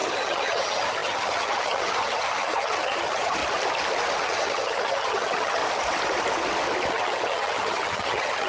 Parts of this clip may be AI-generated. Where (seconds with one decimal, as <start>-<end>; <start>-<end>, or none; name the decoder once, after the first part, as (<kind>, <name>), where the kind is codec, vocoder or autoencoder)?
0.0-3.4 (vocoder, HiFi-GAN); 4.2-5.6; 6.9-8.5